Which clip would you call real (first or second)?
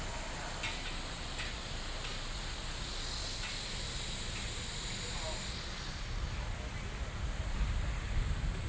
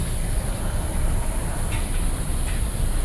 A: first